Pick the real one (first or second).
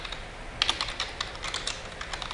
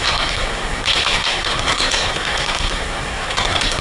first